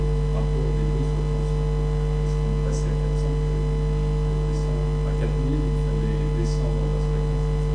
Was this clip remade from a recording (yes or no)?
no